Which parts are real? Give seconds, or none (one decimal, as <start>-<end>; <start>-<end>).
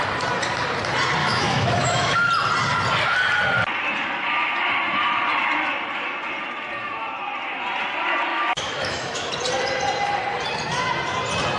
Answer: 0.0-1.2; 2.3-8.3; 9.3-11.6